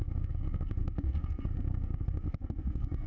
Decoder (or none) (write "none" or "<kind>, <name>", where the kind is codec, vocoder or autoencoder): codec, SNAC